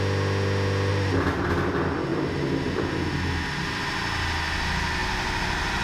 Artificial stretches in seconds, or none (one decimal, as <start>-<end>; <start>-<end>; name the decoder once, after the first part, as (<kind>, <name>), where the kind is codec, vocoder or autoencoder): 0.9-1.5 (vocoder, BigVGAN v2); 2.1-2.8; 5.0-5.8